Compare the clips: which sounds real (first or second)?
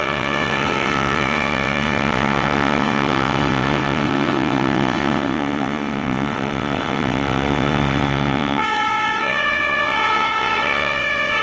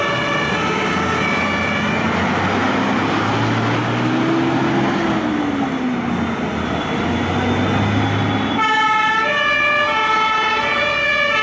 second